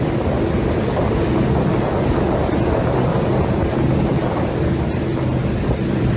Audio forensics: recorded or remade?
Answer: recorded